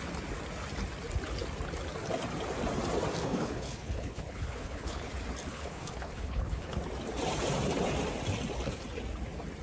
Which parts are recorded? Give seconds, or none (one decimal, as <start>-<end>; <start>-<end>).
0.0-3.2; 5.1-5.5; 6.8-9.6